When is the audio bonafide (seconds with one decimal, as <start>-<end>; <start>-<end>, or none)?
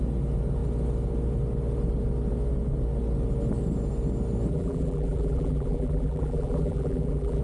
0.0-4.5